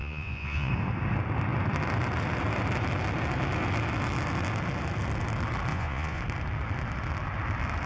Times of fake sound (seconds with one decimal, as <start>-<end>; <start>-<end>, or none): 0.0-0.7; 5.7-6.2